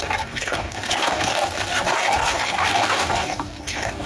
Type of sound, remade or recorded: remade